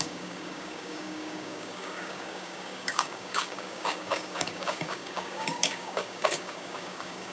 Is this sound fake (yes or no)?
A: yes